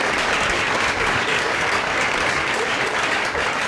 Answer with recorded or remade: remade